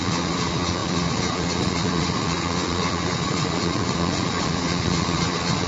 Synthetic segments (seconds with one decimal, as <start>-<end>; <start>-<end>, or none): 0.0-5.7